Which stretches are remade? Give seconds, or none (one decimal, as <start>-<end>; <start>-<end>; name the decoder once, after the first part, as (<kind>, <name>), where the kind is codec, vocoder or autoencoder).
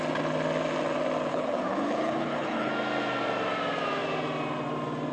1.3-2.7 (codec, HILCodec)